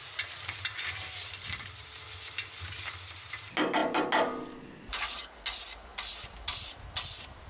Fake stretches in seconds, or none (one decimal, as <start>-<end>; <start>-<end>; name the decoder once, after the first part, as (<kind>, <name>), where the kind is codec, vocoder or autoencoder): none